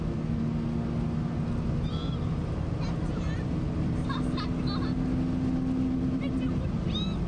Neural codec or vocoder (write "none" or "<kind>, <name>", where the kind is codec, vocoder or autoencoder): none